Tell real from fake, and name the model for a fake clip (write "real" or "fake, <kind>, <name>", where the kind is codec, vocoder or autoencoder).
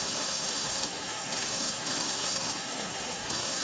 fake, codec, SNAC